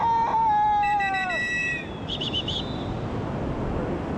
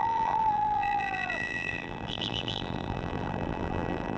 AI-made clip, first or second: second